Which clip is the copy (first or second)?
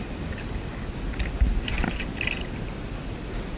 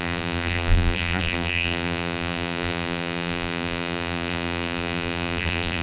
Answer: second